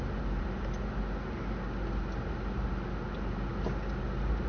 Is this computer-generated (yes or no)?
no